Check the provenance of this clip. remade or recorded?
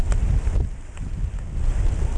recorded